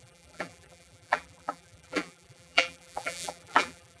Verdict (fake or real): fake